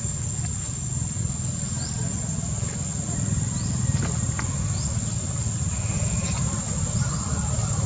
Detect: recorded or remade recorded